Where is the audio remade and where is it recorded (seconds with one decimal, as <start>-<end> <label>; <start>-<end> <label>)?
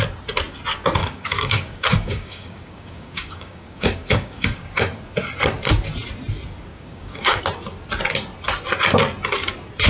0.0-1.0 recorded; 1.0-5.0 remade; 5.0-6.7 recorded; 6.7-7.4 remade; 7.4-9.9 recorded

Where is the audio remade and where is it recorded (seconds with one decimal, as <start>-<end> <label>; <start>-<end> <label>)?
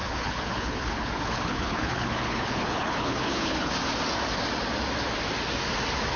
0.0-3.7 remade; 3.7-6.2 recorded